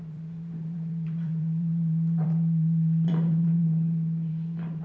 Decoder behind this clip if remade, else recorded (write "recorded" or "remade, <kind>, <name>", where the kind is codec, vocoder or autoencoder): remade, vocoder, BigVGAN v2